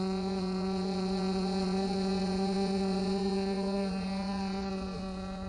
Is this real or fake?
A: fake